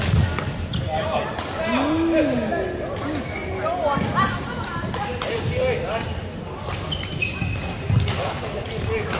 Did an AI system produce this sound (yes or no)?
no